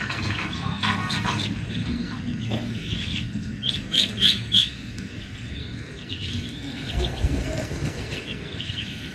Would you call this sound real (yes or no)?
no